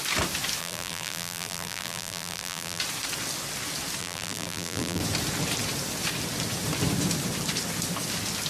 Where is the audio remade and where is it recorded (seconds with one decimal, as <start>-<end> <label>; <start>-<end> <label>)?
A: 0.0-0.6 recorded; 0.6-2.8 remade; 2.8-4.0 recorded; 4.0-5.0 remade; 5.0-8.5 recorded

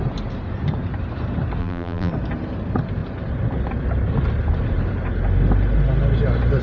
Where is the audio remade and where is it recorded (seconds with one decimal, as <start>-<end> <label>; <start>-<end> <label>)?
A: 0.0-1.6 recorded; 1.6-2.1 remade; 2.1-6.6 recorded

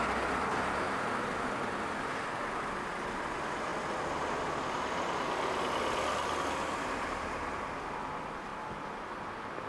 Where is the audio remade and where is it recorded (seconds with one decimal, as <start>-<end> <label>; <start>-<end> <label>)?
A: 0.0-3.7 remade; 3.7-7.9 recorded; 7.9-8.5 remade; 8.5-9.7 recorded

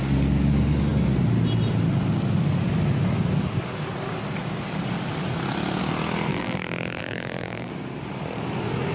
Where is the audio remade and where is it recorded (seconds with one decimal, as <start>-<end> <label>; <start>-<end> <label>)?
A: 0.0-6.3 recorded; 6.3-7.7 remade; 7.7-8.9 recorded

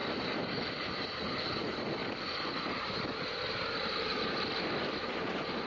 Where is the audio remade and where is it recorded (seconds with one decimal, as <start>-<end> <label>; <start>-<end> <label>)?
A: 0.0-4.1 recorded; 4.1-4.8 remade; 4.8-5.7 recorded